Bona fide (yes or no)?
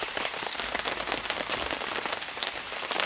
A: yes